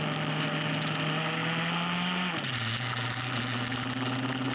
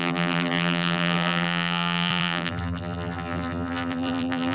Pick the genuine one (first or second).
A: first